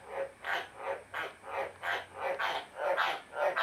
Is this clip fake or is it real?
real